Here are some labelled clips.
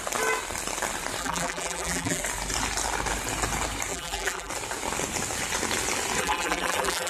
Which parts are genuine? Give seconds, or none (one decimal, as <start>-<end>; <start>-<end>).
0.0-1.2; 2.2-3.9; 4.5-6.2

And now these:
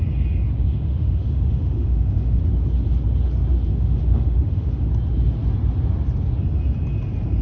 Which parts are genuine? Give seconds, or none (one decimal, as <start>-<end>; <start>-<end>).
0.0-0.7; 2.4-3.7; 4.9-7.4

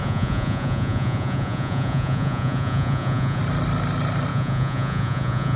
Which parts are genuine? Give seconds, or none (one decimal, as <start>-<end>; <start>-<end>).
3.4-4.3

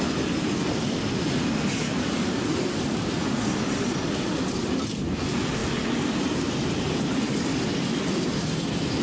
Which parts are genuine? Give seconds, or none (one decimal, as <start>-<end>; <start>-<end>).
0.0-9.0